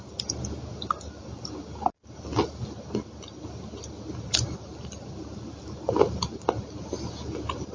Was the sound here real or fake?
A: real